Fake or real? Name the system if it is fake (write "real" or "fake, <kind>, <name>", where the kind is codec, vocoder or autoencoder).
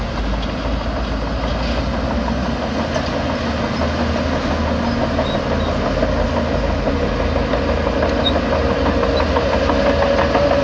real